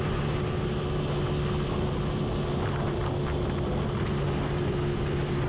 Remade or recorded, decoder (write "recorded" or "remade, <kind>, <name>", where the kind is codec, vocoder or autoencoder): recorded